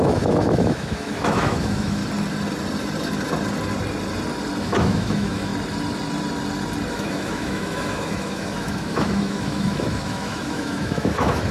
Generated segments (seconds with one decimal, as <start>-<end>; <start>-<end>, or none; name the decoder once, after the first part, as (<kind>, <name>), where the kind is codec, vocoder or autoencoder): 0.0-2.0 (autoencoder, DAC-VAE); 4.6-5.5; 6.9-11.5